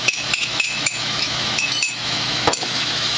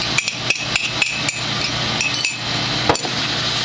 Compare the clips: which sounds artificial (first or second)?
first